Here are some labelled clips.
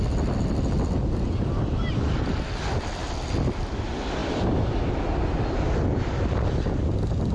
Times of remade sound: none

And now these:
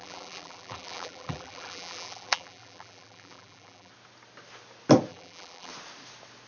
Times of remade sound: 0.0-3.9; 5.1-5.7

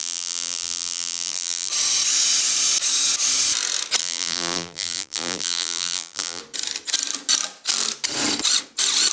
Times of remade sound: 0.0-1.7; 4.0-6.4

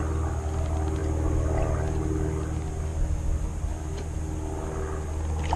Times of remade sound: none

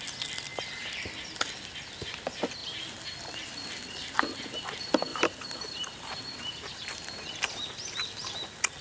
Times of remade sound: 5.1-7.3